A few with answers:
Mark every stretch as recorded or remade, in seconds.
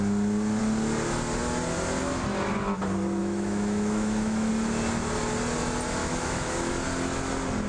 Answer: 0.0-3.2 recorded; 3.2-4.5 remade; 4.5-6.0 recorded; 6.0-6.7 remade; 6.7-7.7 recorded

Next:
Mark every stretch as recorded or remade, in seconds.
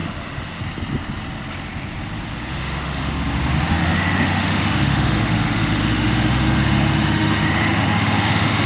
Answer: 0.0-0.6 remade; 0.6-2.5 recorded; 2.5-3.1 remade; 3.1-3.8 recorded; 3.8-8.7 remade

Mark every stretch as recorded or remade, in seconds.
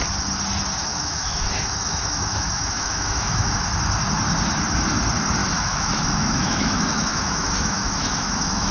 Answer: 0.0-0.9 recorded; 0.9-3.5 remade; 3.5-5.4 recorded; 5.4-8.7 remade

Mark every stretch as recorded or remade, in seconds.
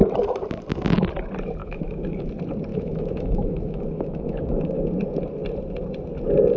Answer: 0.0-1.6 recorded; 1.6-2.3 remade; 2.3-2.7 recorded; 2.7-4.8 remade; 4.8-6.6 recorded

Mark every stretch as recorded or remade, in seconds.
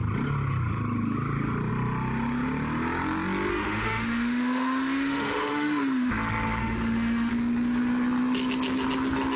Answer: 0.0-3.5 recorded; 3.5-6.1 remade; 6.1-6.6 recorded; 6.6-7.3 remade; 7.3-9.4 recorded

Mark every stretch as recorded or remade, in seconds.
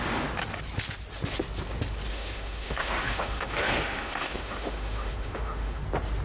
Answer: 0.0-2.1 recorded; 2.1-5.8 remade; 5.8-6.2 recorded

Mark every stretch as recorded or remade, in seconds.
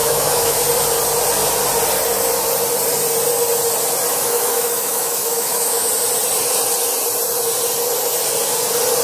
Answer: 0.0-0.6 remade; 0.6-4.1 recorded; 4.1-5.9 remade; 5.9-9.0 recorded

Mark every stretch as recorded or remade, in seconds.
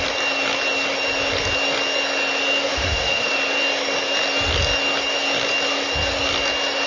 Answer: 0.0-2.7 recorded; 2.7-3.3 remade; 3.3-6.9 recorded